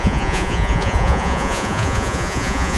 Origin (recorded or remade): remade